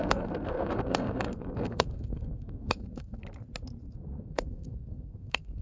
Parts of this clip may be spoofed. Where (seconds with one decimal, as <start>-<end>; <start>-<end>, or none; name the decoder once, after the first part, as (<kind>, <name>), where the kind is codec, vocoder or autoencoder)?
0.0-3.2 (codec, SNAC); 3.8-5.6